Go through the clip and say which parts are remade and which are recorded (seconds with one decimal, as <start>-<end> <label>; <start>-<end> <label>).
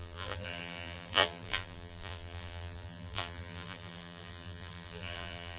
0.0-5.6 remade